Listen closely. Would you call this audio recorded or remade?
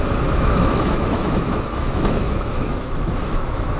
remade